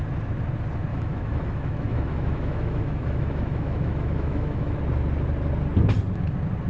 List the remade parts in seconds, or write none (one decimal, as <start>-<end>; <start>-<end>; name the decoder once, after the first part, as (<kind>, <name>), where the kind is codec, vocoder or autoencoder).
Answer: 0.9-4.8 (autoencoder, DAC-VAE)